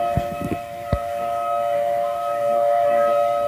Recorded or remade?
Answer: remade